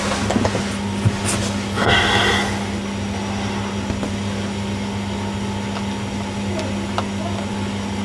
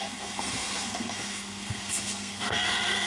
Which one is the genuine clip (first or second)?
first